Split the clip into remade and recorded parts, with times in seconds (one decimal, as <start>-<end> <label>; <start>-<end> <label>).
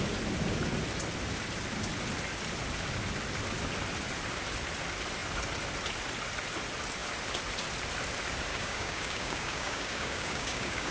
0.0-8.5 recorded; 8.5-10.9 remade